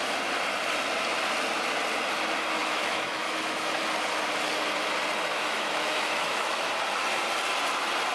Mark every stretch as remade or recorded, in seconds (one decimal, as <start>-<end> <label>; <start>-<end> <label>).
0.0-2.6 recorded; 2.6-3.8 remade; 3.8-5.3 recorded; 5.3-6.7 remade; 6.7-8.1 recorded